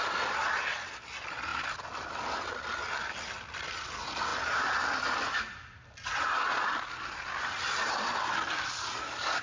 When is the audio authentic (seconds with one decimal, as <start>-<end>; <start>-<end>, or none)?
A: 0.0-9.4